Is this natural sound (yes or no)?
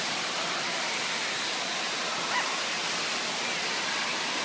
yes